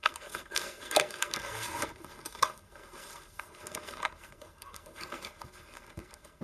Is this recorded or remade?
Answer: remade